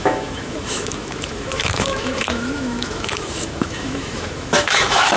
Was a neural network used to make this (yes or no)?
yes